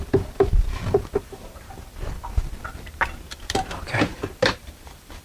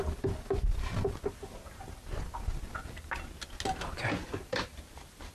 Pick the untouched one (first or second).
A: second